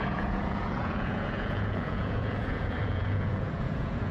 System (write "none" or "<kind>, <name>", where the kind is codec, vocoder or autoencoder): vocoder, Vocos